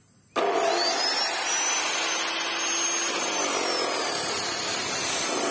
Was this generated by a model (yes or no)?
no